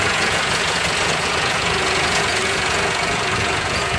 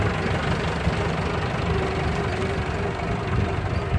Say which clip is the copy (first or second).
first